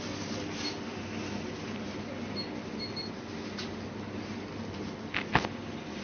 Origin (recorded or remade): recorded